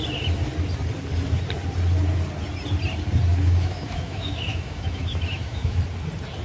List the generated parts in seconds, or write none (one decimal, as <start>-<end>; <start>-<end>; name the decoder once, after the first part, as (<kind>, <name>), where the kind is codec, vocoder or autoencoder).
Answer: 3.3-5.8 (autoencoder, DAC-VAE)